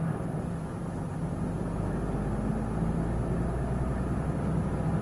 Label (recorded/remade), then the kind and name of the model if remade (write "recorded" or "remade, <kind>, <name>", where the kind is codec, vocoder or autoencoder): recorded